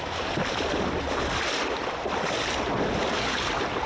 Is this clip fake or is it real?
fake